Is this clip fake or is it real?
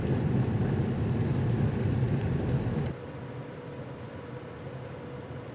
real